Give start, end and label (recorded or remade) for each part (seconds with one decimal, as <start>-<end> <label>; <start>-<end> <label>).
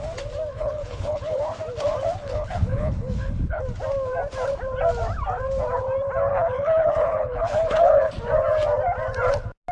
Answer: 0.0-0.5 recorded; 0.5-1.4 remade; 1.4-2.2 recorded; 2.2-3.6 remade; 3.6-6.3 recorded; 6.3-8.1 remade; 8.1-9.7 recorded